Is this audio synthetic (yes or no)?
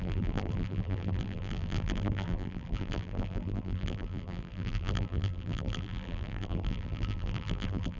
yes